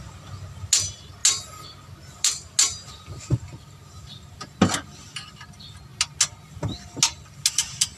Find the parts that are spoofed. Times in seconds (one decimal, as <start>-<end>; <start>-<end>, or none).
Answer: none